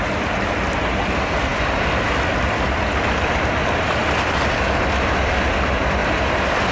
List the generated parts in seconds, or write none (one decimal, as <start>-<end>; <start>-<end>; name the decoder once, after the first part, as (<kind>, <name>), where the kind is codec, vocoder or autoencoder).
none